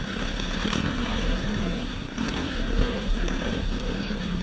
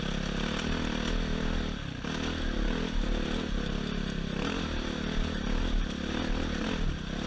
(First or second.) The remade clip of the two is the first